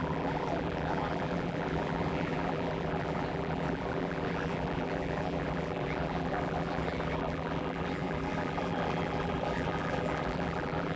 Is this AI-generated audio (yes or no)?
yes